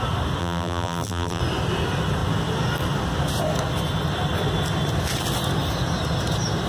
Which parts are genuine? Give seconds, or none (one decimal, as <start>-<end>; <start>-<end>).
0.0-0.4; 1.4-6.7